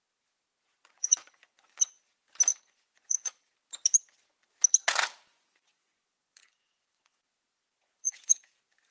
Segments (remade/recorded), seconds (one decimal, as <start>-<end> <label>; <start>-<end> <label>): 0.0-0.8 recorded; 0.8-2.0 remade; 2.0-2.5 recorded; 2.5-3.5 remade; 3.5-5.3 recorded; 5.3-8.4 remade; 8.4-8.9 recorded